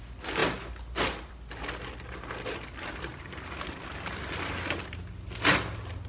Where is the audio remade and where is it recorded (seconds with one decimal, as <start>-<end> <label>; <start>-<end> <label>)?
0.0-3.1 recorded; 3.1-4.2 remade; 4.2-6.1 recorded